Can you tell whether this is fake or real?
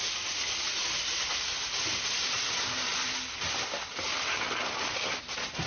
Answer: real